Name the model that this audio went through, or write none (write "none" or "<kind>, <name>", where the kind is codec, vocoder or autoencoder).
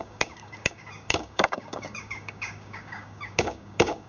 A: codec, DAC